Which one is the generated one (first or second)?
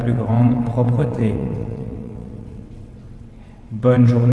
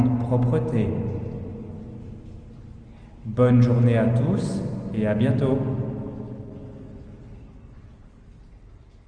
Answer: first